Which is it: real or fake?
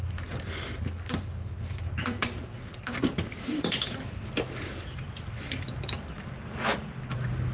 fake